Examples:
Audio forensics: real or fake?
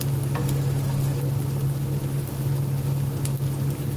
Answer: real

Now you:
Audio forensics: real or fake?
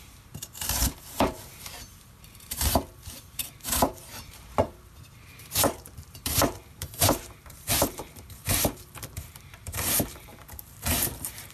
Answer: fake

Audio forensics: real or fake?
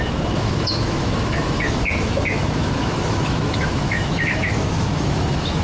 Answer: fake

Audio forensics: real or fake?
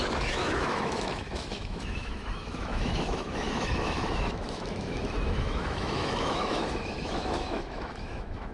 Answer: fake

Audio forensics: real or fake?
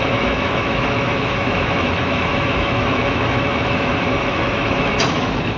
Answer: fake